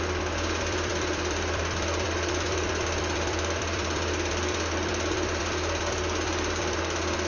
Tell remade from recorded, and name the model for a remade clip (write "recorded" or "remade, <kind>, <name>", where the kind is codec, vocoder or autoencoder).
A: remade, vocoder, BigVGAN v2